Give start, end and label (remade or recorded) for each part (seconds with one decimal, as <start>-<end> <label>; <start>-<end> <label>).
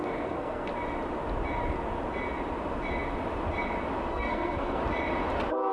0.0-0.7 remade; 0.7-4.1 recorded; 4.1-4.8 remade; 4.8-5.7 recorded